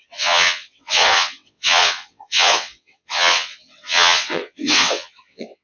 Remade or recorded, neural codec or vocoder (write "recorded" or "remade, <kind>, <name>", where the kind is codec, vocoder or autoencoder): remade, vocoder, WaveNeXt